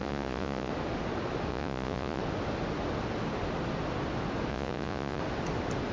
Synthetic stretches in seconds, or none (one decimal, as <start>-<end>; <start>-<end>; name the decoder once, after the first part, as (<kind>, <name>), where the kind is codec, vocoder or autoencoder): 0.0-0.7 (vocoder, Vocos); 1.5-2.2; 4.5-5.2